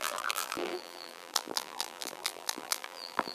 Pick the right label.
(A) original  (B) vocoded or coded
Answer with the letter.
B